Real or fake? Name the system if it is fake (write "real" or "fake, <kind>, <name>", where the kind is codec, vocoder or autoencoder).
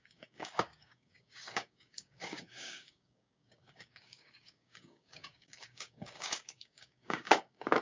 fake, codec, DAC